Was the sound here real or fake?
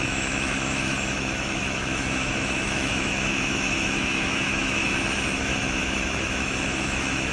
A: fake